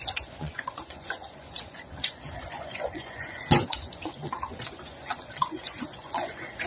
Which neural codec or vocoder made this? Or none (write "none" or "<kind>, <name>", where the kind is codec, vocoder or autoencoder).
vocoder, Vocos